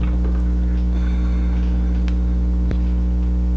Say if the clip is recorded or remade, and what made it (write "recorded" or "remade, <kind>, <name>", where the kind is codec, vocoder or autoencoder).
recorded